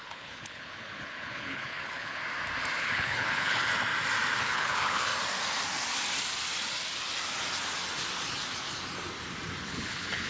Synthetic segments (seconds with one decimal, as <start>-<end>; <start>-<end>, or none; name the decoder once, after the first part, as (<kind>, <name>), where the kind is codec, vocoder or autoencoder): 0.0-2.2 (codec, HILCodec); 2.8-3.7; 4.4-5.1; 9.6-10.3